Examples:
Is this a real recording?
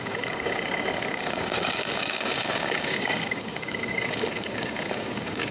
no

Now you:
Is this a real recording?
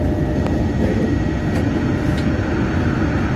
yes